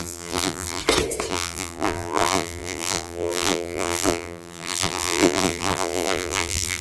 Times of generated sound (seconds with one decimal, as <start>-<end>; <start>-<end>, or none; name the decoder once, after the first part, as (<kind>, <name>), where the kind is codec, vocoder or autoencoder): 0.0-0.8 (vocoder, BigVGAN v2); 1.3-6.8